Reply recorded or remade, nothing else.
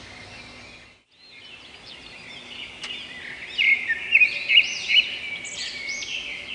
recorded